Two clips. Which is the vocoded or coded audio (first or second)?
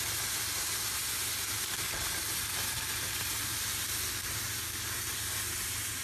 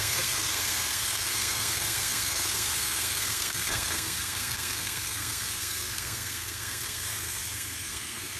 second